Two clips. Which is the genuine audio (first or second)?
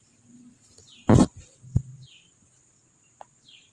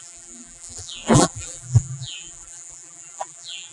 first